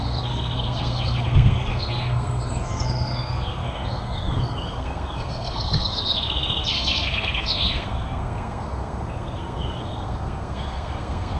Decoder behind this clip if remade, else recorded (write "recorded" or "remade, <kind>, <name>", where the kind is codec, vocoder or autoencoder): remade, codec, SNAC